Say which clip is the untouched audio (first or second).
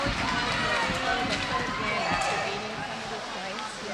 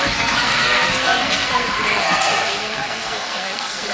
first